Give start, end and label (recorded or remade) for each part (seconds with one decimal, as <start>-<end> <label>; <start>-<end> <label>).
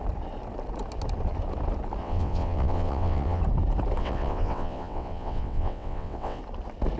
0.0-2.0 recorded; 2.0-3.4 remade; 3.4-4.0 recorded; 4.0-6.4 remade; 6.4-7.0 recorded